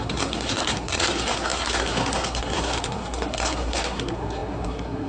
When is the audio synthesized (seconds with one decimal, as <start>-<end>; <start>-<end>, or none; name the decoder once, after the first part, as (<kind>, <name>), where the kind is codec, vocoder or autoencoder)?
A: 0.0-5.1 (codec, SNAC)